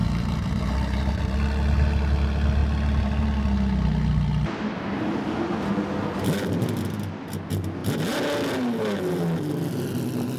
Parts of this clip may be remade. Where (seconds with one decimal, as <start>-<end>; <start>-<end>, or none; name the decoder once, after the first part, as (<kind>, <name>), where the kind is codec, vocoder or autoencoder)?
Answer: 0.0-1.2 (vocoder, BigVGAN v2)